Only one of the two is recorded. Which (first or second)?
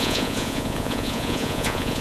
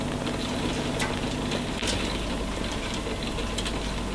second